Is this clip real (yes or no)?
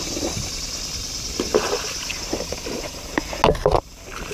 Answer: yes